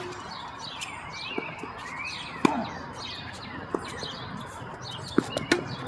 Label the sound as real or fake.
real